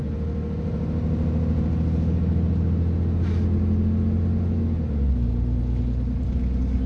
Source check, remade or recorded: recorded